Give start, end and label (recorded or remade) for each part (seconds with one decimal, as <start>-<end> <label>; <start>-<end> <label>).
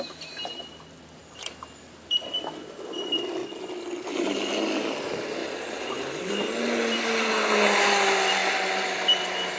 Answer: 0.0-5.4 recorded; 5.4-6.3 remade; 6.3-9.6 recorded